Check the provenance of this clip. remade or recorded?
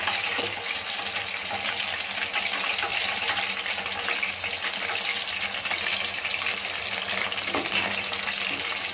recorded